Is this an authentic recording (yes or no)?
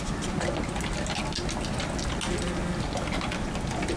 yes